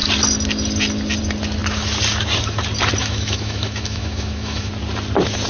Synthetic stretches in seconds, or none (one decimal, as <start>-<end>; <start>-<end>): 3.0-4.7

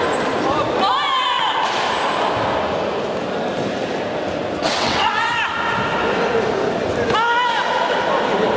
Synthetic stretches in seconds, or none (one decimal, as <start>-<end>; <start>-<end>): 4.6-5.4